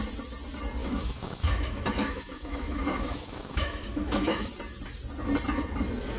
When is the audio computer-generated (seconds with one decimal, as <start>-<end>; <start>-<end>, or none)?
0.8-4.5